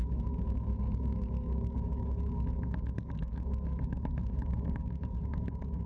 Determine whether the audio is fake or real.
fake